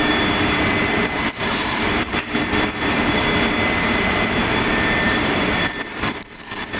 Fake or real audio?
fake